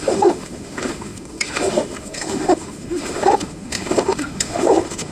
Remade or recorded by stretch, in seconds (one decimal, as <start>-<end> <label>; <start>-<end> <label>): 0.0-5.1 remade